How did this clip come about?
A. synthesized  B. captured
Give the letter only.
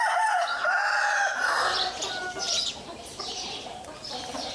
A